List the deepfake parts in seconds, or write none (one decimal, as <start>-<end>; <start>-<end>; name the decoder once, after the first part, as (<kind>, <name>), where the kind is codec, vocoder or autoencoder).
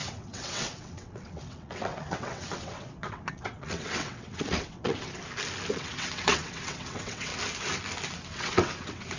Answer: 0.0-5.2 (vocoder, WaveNeXt); 5.7-7.3; 8.3-9.2